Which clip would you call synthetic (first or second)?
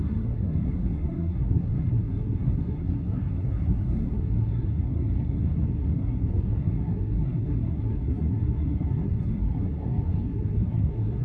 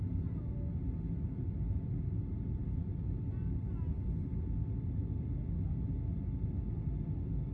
first